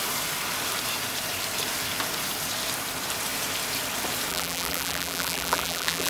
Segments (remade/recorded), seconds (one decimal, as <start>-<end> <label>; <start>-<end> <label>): 0.0-4.3 recorded; 4.3-6.1 remade